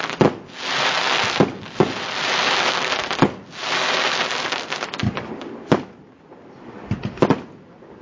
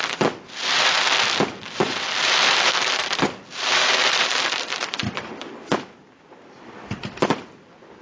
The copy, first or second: second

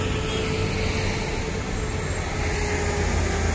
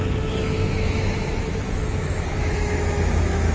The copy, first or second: second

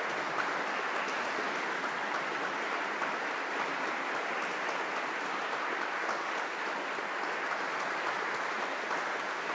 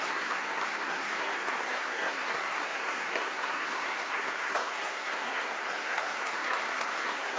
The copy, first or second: second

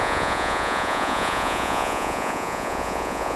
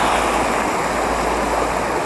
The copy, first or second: first